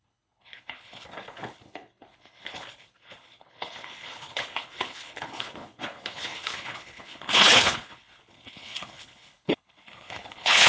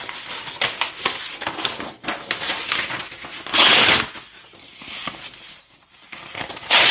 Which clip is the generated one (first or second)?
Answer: first